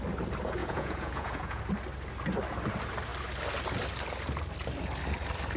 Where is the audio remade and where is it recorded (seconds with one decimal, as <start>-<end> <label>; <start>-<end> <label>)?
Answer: 0.0-0.6 recorded; 0.6-1.6 remade; 1.6-5.6 recorded